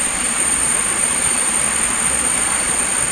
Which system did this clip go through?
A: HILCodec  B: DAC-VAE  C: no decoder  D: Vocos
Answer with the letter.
D